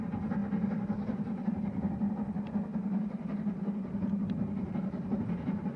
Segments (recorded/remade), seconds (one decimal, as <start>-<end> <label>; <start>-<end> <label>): 0.0-0.4 recorded; 0.4-2.1 remade; 2.1-2.7 recorded; 2.7-5.8 remade